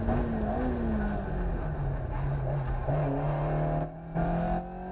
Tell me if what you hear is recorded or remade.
recorded